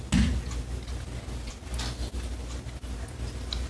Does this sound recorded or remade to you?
recorded